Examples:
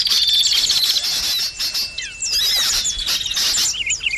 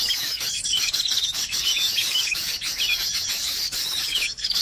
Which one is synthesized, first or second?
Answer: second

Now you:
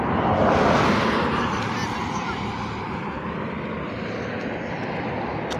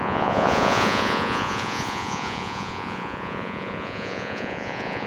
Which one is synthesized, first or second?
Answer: second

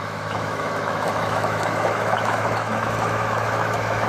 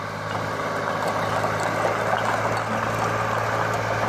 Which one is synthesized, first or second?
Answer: first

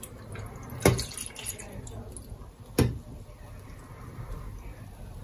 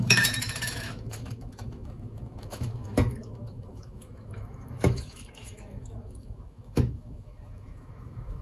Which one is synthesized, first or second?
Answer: second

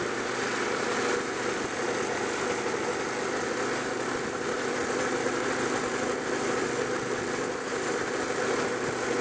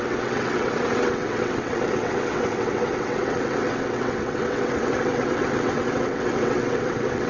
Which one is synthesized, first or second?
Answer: second